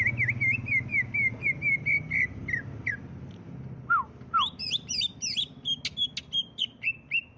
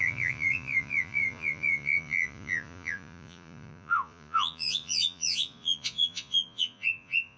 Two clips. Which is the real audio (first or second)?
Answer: first